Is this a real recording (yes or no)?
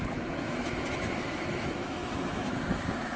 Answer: no